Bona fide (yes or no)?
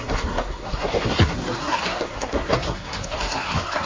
no